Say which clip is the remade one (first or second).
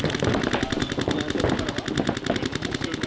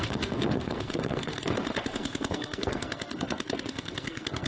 second